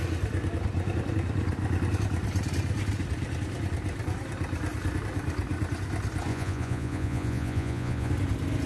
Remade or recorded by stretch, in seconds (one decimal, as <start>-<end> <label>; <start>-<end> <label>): 0.0-6.3 recorded; 6.3-8.1 remade; 8.1-8.7 recorded